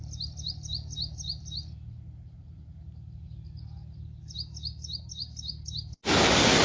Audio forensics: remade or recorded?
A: recorded